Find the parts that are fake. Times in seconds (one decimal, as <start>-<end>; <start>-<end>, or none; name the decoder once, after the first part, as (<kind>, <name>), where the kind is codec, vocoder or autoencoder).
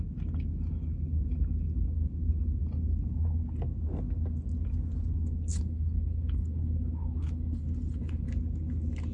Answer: 5.5-8.3 (codec, HILCodec)